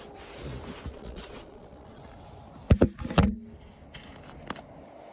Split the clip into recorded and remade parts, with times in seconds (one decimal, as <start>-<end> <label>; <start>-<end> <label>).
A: 0.0-0.9 recorded; 0.9-2.0 remade; 2.0-5.1 recorded